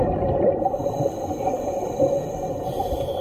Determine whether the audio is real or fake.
fake